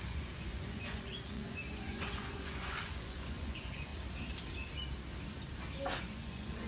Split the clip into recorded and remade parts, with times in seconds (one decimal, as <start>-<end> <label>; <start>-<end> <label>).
0.0-3.9 remade; 3.9-6.0 recorded; 6.0-6.7 remade